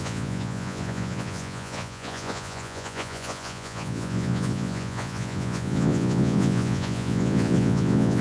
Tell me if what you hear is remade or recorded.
remade